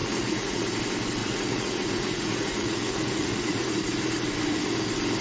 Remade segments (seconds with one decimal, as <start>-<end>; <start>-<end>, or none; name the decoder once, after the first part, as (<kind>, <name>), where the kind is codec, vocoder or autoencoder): 0.0-0.6 (vocoder, Vocos); 1.2-3.6